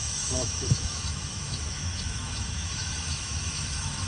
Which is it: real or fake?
fake